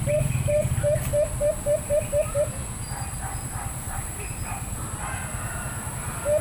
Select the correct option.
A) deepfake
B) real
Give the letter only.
B